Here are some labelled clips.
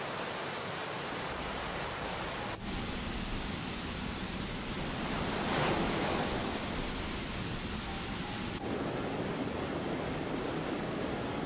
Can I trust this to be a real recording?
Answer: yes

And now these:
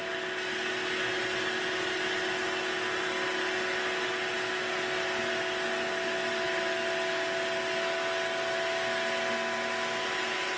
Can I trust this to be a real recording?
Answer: yes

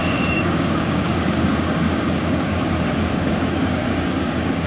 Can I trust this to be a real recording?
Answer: no